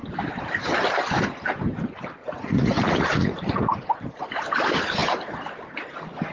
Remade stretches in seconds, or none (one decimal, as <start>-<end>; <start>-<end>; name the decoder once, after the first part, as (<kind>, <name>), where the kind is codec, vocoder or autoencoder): 2.2-4.3 (vocoder, Vocos)

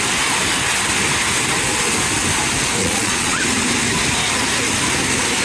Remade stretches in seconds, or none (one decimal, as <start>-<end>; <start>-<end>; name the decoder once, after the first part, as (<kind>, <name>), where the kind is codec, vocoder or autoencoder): 2.8-3.4 (vocoder, Vocos)